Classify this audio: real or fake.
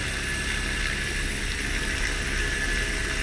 real